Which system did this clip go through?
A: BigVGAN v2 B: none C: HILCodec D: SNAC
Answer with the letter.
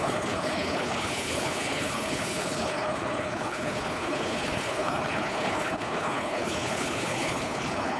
C